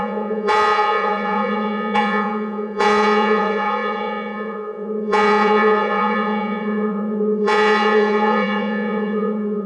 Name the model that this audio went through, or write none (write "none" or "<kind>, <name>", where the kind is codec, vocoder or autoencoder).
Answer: vocoder, Vocos